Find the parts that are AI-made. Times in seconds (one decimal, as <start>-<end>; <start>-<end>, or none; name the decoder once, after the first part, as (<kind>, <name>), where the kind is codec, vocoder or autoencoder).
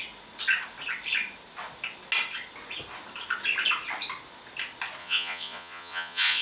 5.0-6.4 (vocoder, Vocos)